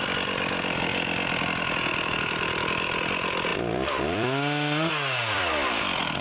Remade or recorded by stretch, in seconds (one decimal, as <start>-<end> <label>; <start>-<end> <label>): 0.0-0.9 remade; 0.9-1.9 recorded; 1.9-6.2 remade